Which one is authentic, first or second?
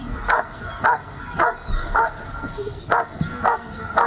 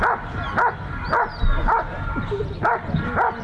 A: second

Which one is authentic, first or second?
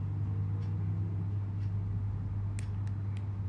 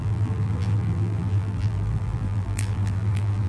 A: first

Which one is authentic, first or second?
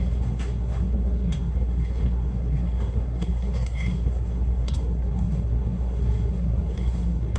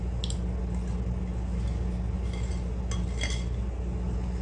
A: second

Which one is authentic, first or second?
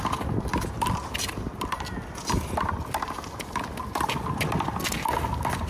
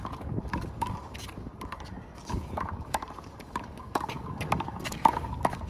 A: first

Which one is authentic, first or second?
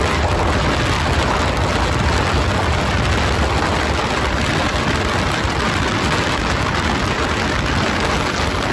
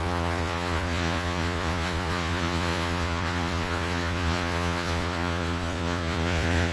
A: first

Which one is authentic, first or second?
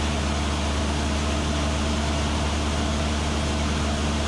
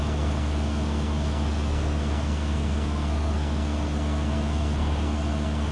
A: first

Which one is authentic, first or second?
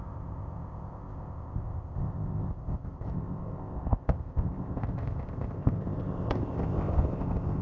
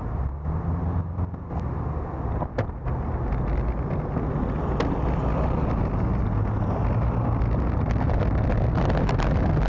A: second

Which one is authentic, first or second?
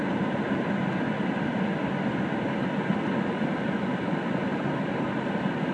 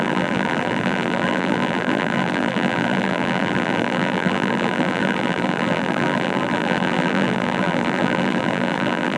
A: first